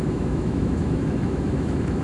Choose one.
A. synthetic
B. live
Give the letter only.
A